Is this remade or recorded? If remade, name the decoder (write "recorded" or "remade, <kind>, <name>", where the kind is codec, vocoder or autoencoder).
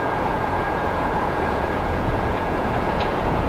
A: remade, vocoder, Vocos